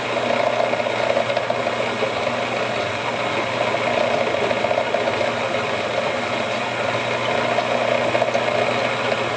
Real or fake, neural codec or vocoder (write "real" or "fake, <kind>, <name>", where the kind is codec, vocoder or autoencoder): real